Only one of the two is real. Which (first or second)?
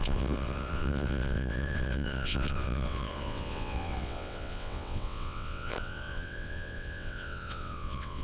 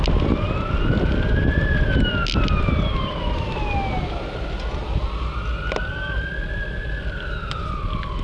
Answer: second